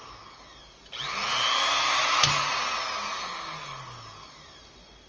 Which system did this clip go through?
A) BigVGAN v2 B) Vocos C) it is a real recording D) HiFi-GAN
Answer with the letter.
C